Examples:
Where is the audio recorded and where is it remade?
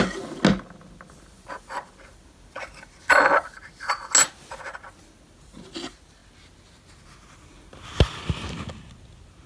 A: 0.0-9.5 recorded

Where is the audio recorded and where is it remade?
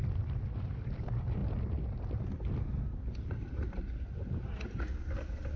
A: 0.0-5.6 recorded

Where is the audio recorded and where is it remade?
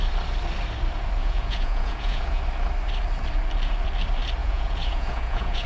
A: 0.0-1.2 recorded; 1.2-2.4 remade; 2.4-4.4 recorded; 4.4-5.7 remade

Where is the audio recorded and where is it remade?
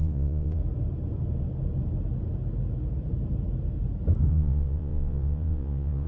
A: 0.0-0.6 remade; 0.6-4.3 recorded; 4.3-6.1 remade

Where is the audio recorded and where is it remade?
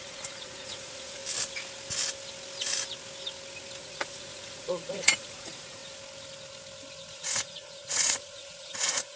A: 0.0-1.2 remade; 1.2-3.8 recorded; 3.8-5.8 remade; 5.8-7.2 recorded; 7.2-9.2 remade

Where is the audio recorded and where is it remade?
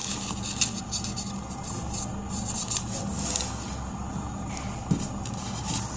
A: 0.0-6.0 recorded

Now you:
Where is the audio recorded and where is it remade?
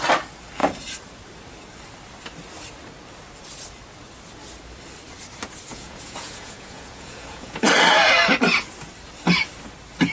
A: 0.0-5.7 recorded; 5.7-7.7 remade; 7.7-10.1 recorded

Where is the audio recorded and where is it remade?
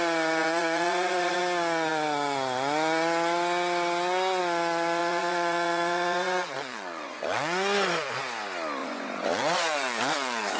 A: 0.0-0.4 recorded; 0.4-1.4 remade; 1.4-5.0 recorded; 5.0-8.1 remade; 8.1-8.8 recorded; 8.8-10.6 remade